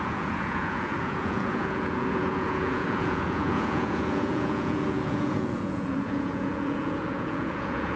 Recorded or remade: remade